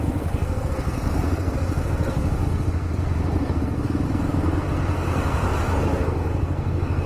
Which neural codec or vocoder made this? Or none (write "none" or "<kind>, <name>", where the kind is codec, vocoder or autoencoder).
codec, SNAC